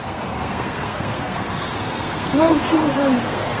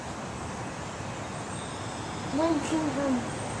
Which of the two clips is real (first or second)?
second